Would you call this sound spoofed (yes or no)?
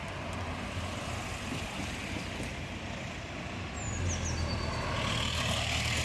no